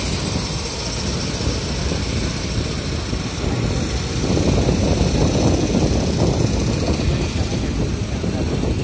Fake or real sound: real